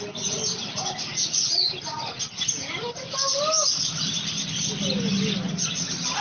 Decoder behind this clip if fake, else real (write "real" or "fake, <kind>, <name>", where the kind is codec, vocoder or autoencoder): real